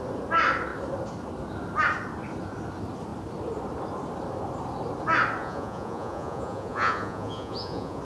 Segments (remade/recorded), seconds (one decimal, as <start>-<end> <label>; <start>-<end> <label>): 0.0-5.4 recorded; 5.4-8.0 remade